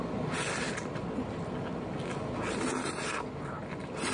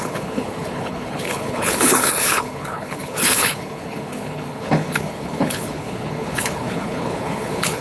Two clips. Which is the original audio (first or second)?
first